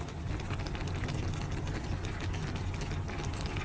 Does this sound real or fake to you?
real